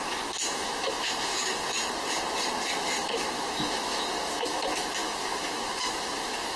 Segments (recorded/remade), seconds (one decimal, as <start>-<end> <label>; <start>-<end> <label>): 0.0-1.8 remade; 1.8-2.8 recorded; 2.8-6.6 remade